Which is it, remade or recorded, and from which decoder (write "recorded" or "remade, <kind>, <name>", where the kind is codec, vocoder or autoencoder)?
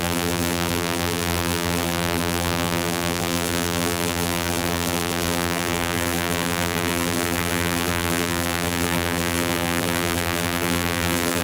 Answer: remade, vocoder, BigVGAN v2